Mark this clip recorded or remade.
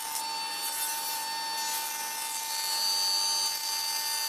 recorded